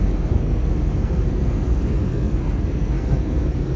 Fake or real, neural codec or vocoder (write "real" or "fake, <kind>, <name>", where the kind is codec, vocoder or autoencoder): fake, codec, SNAC